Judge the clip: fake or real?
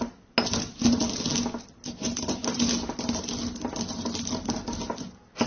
real